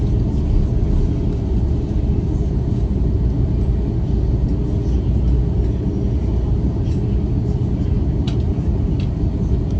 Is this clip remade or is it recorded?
recorded